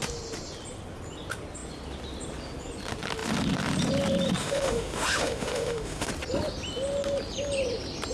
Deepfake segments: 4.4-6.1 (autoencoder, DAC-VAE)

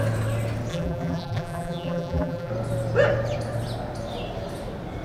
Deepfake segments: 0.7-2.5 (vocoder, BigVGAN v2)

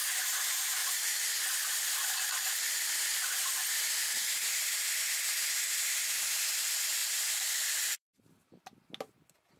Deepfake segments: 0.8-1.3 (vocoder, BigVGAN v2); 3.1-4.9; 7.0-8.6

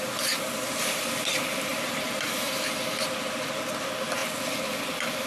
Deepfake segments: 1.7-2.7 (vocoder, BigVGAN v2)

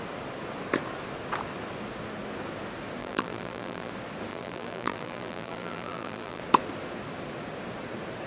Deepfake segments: 3.0-3.9 (vocoder, BigVGAN v2); 4.3-6.4

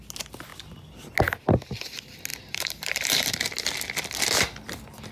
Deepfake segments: 2.3-3.4 (vocoder, BigVGAN v2)

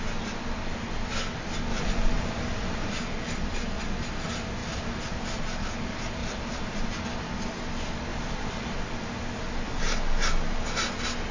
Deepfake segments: 1.7-2.9 (vocoder, BigVGAN v2); 4.6-5.4; 6.2-6.9; 8.1-8.8